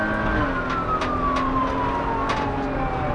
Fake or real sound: real